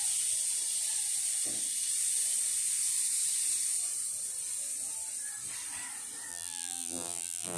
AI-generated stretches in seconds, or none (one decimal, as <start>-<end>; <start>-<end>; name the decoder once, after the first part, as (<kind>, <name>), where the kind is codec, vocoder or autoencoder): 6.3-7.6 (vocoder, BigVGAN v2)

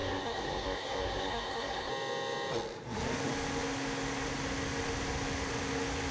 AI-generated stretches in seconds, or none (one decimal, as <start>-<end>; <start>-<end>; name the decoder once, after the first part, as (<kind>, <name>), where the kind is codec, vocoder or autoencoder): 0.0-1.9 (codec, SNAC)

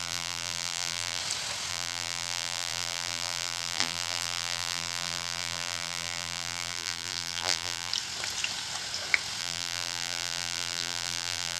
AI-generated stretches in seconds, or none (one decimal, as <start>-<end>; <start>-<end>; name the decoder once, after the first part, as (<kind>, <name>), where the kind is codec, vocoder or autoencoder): 0.0-1.2 (vocoder, BigVGAN v2); 1.7-7.9; 9.4-11.6

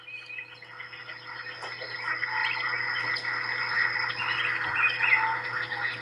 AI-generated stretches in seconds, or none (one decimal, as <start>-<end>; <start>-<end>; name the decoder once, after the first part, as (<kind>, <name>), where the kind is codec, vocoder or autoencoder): none

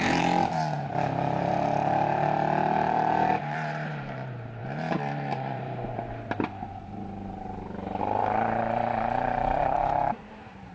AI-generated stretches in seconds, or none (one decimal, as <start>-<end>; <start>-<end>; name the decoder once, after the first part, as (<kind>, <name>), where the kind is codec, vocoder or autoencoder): 0.0-4.6 (vocoder, BigVGAN v2); 5.5-8.2; 9.2-10.7

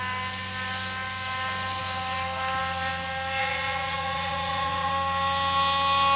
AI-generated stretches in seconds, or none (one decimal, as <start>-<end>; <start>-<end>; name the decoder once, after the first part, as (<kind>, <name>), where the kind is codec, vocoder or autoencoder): 3.4-4.9 (vocoder, Vocos)

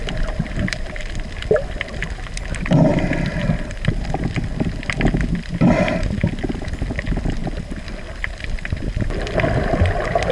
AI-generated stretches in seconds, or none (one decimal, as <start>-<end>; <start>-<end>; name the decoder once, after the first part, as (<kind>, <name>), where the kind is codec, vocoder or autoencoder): none